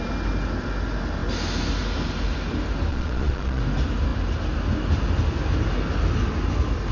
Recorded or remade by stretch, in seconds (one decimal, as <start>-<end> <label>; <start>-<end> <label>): 0.0-2.9 recorded; 2.9-3.6 remade; 3.6-6.9 recorded